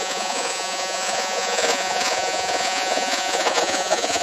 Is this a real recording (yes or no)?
no